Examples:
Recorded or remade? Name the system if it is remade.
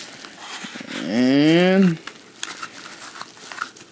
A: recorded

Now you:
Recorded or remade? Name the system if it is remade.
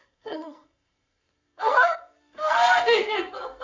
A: remade, codec, SNAC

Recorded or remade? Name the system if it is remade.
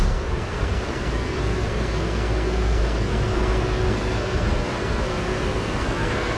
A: remade, codec, SNAC